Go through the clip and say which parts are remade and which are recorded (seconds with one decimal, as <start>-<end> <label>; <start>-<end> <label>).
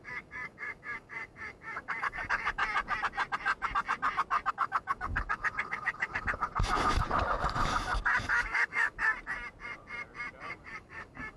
0.0-2.6 remade; 2.6-4.5 recorded; 4.5-6.5 remade; 6.5-8.3 recorded; 8.3-9.1 remade; 9.1-10.5 recorded; 10.5-11.4 remade